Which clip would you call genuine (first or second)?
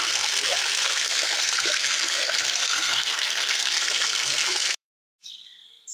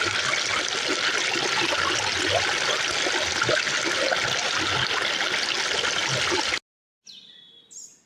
second